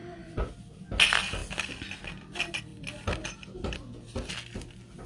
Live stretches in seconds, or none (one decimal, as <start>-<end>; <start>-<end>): 0.5-5.1